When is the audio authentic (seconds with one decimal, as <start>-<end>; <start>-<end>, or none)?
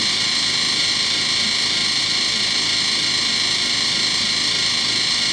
0.0-5.3